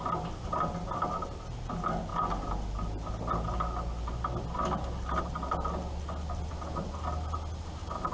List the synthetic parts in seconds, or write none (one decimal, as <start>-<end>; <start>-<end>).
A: none